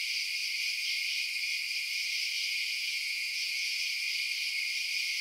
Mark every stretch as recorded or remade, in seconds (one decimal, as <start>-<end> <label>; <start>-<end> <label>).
0.0-2.5 recorded; 2.5-3.8 remade; 3.8-5.2 recorded